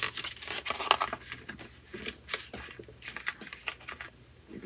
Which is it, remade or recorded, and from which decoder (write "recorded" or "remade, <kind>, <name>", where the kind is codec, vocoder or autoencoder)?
recorded